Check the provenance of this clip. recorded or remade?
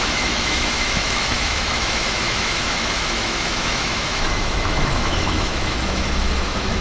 remade